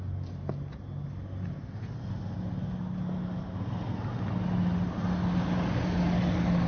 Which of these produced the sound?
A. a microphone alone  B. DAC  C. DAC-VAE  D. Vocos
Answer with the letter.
A